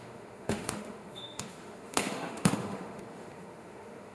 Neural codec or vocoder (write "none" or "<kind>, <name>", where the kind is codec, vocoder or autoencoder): autoencoder, DAC-VAE